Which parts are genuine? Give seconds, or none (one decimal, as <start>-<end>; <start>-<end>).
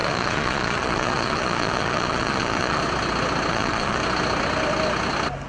2.8-3.5; 4.0-5.5